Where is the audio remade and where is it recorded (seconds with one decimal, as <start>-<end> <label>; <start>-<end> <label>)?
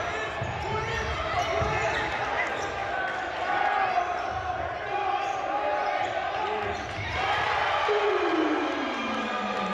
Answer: 0.0-9.7 recorded